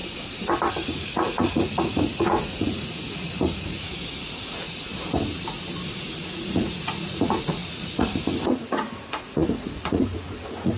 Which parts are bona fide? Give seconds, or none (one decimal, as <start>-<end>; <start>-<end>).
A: 0.0-0.7; 4.9-6.0

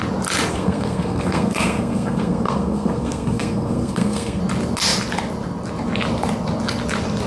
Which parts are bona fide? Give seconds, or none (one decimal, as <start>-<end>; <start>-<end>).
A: 0.0-0.5; 4.4-7.3

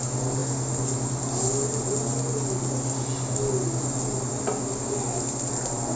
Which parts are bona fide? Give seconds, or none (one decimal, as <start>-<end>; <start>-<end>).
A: 0.0-6.0

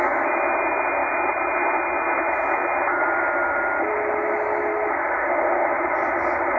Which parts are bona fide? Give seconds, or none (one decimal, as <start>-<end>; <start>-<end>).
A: 0.0-6.6